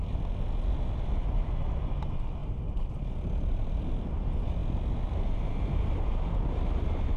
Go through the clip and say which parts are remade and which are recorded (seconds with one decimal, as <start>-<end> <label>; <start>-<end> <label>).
0.0-7.2 recorded

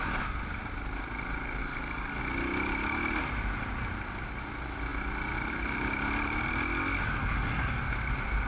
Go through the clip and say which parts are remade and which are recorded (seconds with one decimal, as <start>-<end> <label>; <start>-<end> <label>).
0.0-1.6 recorded; 1.6-2.2 remade; 2.2-7.2 recorded; 7.2-7.8 remade; 7.8-8.5 recorded